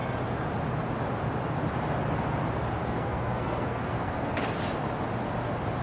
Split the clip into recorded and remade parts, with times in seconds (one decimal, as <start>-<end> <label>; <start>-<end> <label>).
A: 0.0-2.8 recorded; 2.8-4.4 remade; 4.4-5.8 recorded